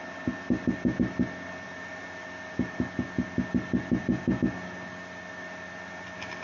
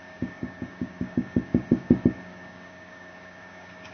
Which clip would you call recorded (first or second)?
first